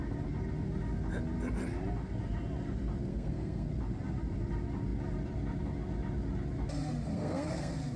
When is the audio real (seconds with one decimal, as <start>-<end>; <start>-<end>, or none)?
0.0-3.1; 3.7-7.1